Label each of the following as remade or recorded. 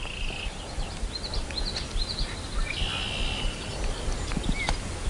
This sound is recorded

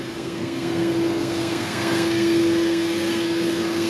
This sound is remade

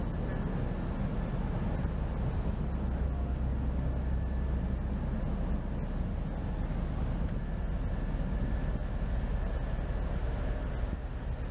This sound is recorded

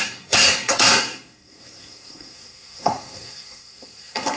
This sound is remade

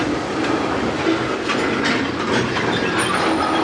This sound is recorded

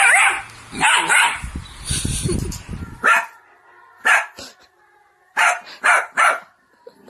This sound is recorded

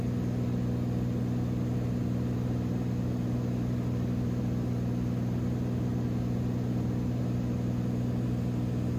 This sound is recorded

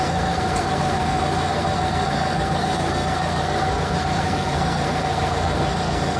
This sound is remade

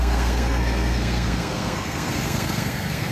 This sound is remade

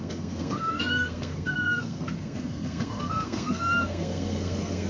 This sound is remade